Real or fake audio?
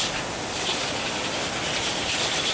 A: real